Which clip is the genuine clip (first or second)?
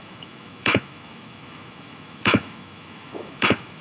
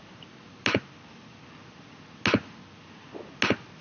second